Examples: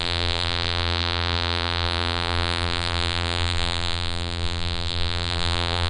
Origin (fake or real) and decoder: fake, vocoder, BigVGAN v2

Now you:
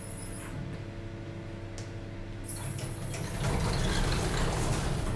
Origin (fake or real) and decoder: real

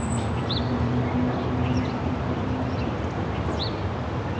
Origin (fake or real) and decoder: real